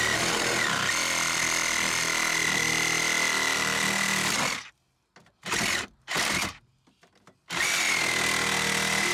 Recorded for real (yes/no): yes